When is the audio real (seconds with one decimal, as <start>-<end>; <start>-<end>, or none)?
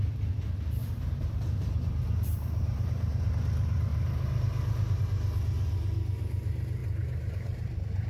0.0-0.8; 3.3-3.9; 5.0-6.8